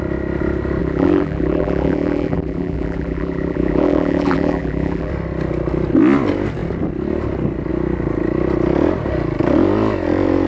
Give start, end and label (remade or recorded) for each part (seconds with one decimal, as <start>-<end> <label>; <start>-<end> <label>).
0.0-0.8 recorded; 0.8-5.1 remade; 5.1-10.5 recorded